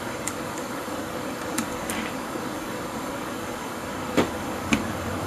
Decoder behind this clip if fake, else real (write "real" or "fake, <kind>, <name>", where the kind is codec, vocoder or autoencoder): fake, codec, DAC